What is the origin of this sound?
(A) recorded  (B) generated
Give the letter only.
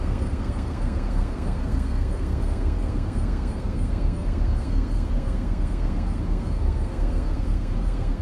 B